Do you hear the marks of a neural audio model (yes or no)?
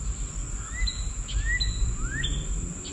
no